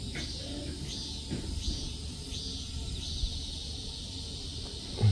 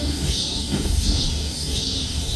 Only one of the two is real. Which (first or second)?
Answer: first